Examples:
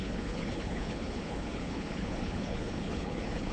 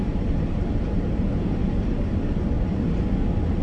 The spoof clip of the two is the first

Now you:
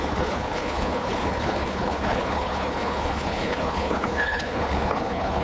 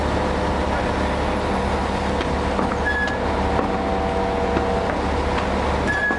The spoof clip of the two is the first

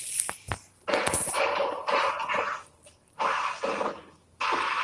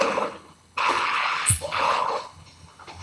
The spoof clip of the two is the second